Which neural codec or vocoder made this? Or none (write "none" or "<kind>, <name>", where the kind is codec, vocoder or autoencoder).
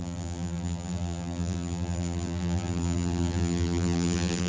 vocoder, BigVGAN v2